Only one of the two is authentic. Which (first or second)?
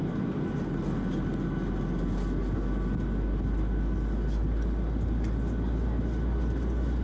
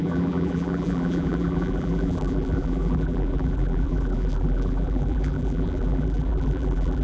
first